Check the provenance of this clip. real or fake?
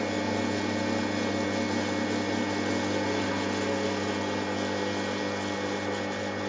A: real